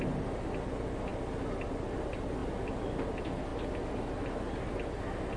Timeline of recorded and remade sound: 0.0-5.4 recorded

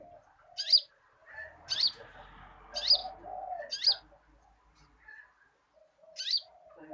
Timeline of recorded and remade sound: 0.0-1.2 recorded; 1.2-1.8 remade; 1.8-6.9 recorded

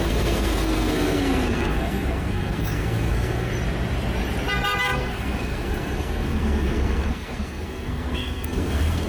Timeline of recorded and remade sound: 0.0-3.5 remade; 3.5-4.5 recorded; 4.5-9.1 remade

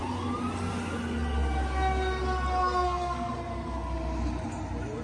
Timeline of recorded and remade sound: 0.0-2.6 recorded; 2.6-3.3 remade; 3.3-5.0 recorded

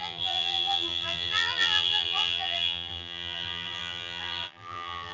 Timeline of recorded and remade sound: 0.0-5.1 remade

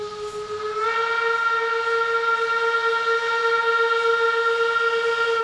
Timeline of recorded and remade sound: 0.0-5.4 recorded